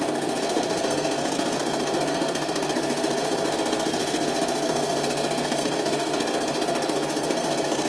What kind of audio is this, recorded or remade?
remade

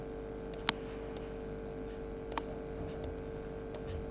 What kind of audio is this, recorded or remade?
recorded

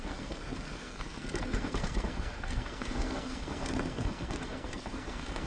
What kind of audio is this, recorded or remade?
remade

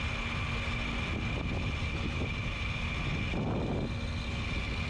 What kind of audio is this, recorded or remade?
recorded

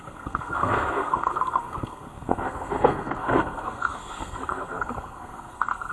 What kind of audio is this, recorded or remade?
remade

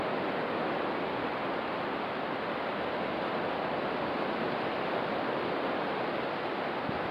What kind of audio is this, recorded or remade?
recorded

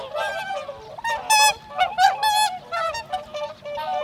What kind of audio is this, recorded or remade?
recorded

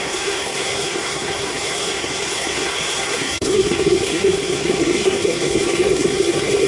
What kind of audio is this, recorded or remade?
remade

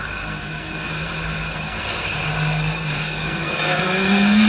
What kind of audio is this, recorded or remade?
remade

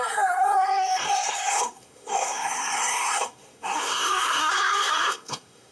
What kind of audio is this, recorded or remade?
remade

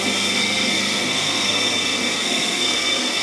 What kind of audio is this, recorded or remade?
remade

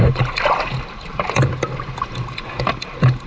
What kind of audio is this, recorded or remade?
recorded